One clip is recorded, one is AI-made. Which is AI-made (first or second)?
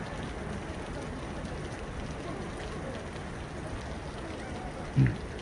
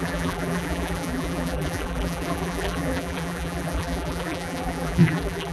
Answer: second